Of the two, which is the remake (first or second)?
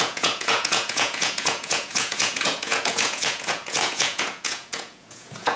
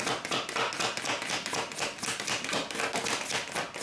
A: first